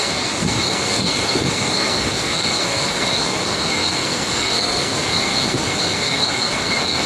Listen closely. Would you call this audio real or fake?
fake